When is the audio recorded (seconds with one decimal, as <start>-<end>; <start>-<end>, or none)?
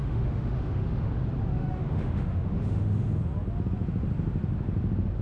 1.1-1.5; 3.1-5.2